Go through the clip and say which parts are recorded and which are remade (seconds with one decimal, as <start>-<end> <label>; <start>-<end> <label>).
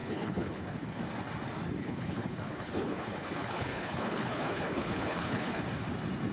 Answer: 0.0-1.0 remade; 1.0-1.8 recorded; 1.8-5.6 remade; 5.6-6.3 recorded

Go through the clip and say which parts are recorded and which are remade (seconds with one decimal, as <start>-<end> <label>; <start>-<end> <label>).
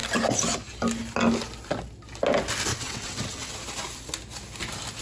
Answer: 0.0-2.7 recorded; 2.7-3.5 remade; 3.5-5.0 recorded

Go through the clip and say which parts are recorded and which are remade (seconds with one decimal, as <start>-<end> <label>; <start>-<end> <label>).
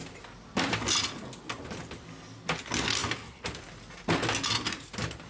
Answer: 0.0-5.3 recorded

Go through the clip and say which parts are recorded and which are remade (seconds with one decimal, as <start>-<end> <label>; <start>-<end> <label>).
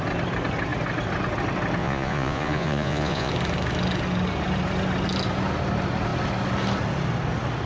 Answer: 0.0-1.8 recorded; 1.8-3.3 remade; 3.3-7.7 recorded